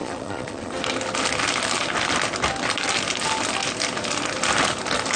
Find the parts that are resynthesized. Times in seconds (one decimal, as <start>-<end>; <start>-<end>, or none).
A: 0.0-0.7